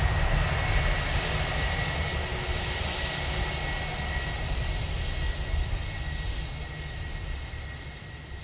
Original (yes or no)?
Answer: yes